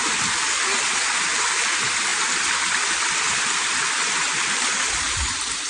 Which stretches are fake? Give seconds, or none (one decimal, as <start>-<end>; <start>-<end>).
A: 2.1-5.7